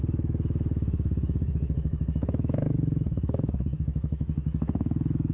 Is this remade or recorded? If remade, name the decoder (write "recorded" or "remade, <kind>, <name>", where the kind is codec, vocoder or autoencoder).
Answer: remade, autoencoder, DAC-VAE